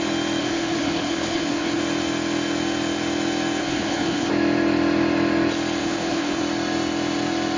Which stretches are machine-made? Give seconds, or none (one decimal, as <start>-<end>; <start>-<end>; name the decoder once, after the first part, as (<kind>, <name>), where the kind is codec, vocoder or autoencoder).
0.4-1.8 (codec, HILCodec); 3.6-4.3; 5.8-6.4